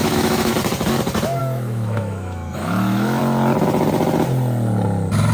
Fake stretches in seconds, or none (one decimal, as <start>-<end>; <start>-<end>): 0.0-0.5; 1.4-3.2